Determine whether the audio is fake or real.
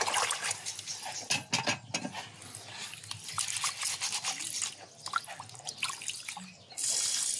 real